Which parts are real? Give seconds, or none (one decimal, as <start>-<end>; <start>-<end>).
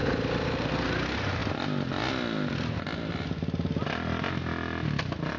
0.7-1.4; 2.1-5.4